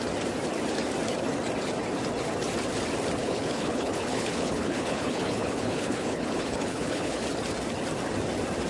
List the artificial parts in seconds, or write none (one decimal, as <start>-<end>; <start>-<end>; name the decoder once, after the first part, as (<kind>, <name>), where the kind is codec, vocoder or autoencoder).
3.2-7.2 (codec, HILCodec)